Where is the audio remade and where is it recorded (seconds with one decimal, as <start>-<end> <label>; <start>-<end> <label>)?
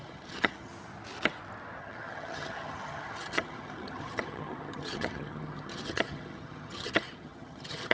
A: 0.0-0.7 remade; 0.7-1.8 recorded; 1.8-7.9 remade